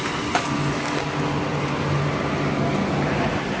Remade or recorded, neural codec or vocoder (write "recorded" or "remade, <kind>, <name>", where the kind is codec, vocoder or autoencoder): recorded